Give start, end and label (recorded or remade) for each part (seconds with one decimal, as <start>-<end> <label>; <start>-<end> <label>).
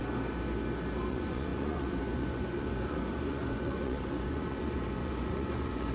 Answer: 0.0-1.1 recorded; 1.1-5.9 remade